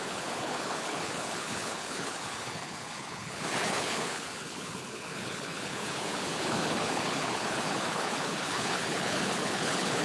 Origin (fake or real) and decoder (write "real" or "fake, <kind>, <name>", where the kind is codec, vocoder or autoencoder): fake, codec, HILCodec